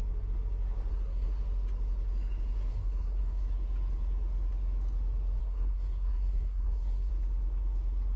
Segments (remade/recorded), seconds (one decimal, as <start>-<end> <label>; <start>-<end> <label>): 0.0-0.9 recorded; 0.9-1.4 remade; 1.4-2.7 recorded; 2.7-3.4 remade; 3.4-5.4 recorded; 5.4-7.1 remade; 7.1-8.2 recorded